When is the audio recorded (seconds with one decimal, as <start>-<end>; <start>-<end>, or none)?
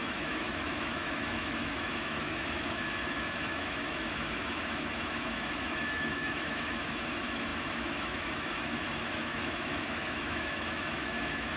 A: none